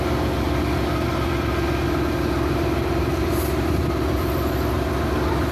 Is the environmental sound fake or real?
real